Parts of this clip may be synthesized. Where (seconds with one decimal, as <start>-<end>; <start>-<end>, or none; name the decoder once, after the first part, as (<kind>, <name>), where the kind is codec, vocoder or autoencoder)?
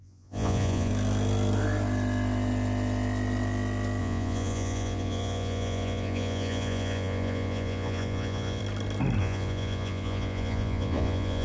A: 0.0-0.9 (vocoder, Vocos); 4.0-8.6; 9.2-11.4